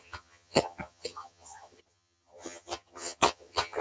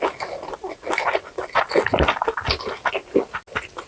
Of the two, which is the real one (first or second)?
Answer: second